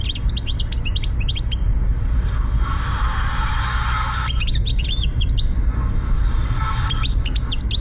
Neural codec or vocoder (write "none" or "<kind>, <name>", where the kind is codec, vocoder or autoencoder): none